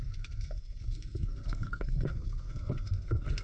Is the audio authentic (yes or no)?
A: no